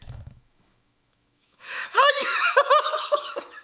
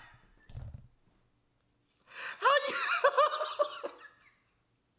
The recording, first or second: second